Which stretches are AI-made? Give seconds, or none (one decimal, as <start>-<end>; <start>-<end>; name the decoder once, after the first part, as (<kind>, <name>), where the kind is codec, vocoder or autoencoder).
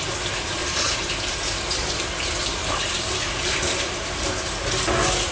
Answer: 0.6-1.5 (vocoder, BigVGAN v2); 2.6-4.3